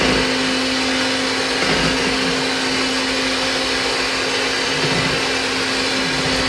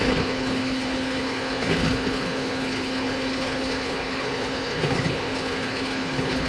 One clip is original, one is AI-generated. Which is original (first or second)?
first